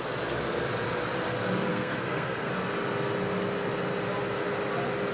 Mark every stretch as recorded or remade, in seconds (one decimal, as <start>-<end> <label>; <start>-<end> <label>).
0.0-1.7 recorded; 1.7-2.5 remade; 2.5-5.1 recorded

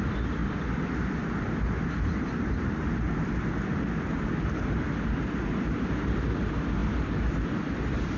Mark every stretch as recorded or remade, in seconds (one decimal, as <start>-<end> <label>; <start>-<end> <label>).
0.0-8.2 recorded